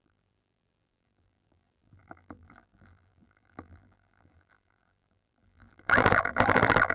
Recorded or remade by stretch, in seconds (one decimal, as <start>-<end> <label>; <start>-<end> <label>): 0.0-6.9 remade